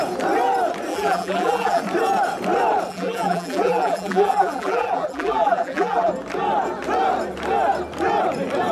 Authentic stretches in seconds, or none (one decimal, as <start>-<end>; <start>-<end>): 0.0-0.9; 1.8-2.9; 6.1-8.7